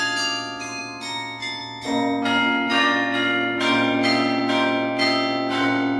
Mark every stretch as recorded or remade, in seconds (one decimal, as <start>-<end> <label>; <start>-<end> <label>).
0.0-2.7 recorded; 2.7-4.4 remade; 4.4-6.0 recorded